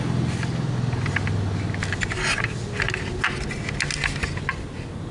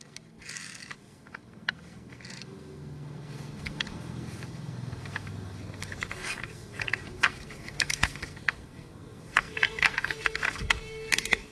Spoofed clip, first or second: second